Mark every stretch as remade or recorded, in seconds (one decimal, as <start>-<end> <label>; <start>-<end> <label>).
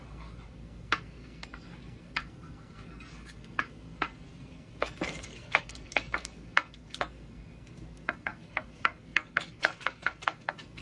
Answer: 0.0-10.8 remade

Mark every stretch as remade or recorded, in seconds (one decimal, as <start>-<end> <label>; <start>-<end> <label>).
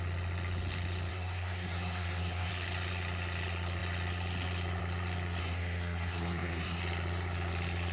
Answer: 0.0-1.1 recorded; 1.1-2.5 remade; 2.5-5.4 recorded; 5.4-6.8 remade; 6.8-7.9 recorded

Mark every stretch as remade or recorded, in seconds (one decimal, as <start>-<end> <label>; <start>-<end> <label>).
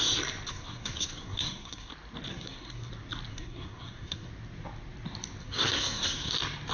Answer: 0.0-0.5 recorded; 0.5-1.9 remade; 1.9-2.3 recorded; 2.3-2.9 remade; 2.9-3.3 recorded; 3.3-4.3 remade; 4.3-5.4 recorded; 5.4-6.3 remade; 6.3-6.7 recorded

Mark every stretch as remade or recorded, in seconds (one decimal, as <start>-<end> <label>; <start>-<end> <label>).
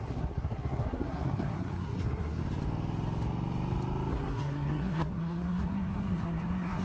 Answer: 0.0-2.4 remade; 2.4-4.1 recorded; 4.1-6.8 remade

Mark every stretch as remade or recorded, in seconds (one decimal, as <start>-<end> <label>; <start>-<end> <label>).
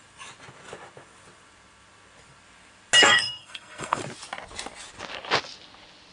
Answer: 0.0-3.0 recorded; 3.0-4.0 remade; 4.0-6.1 recorded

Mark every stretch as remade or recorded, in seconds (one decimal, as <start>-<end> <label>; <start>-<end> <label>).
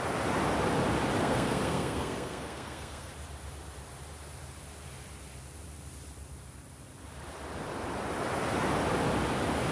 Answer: 0.0-1.2 recorded; 1.2-3.1 remade; 3.1-9.7 recorded